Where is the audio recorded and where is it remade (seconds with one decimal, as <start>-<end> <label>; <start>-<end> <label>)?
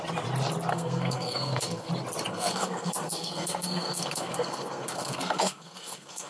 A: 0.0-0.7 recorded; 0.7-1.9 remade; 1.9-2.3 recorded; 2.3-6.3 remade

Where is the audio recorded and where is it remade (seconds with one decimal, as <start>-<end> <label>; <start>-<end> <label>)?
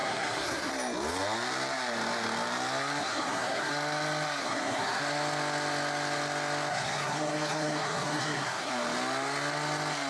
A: 0.0-0.7 remade; 0.7-3.0 recorded; 3.0-3.7 remade; 3.7-4.4 recorded; 4.4-5.0 remade; 5.0-6.7 recorded; 6.7-8.7 remade; 8.7-10.1 recorded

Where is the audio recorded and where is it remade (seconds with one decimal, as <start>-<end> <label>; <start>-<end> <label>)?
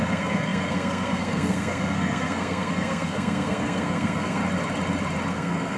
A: 0.0-4.4 remade; 4.4-5.3 recorded; 5.3-5.8 remade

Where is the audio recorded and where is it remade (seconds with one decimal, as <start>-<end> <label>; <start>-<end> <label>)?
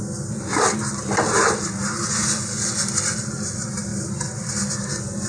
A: 0.0-5.3 recorded